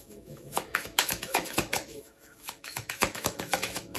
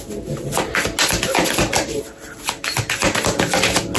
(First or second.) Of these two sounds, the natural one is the second